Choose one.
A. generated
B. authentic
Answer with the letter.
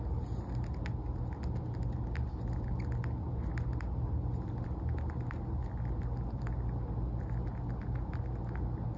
B